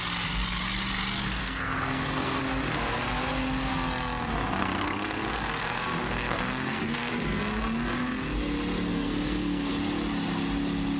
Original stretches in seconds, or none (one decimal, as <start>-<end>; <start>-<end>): 0.0-1.4; 2.4-4.6; 7.1-8.9; 9.7-11.0